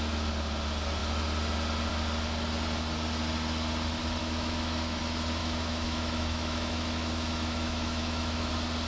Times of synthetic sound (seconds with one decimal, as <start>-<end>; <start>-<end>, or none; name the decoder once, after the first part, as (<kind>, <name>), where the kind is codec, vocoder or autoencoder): 4.2-5.0 (autoencoder, DAC-VAE); 5.4-8.5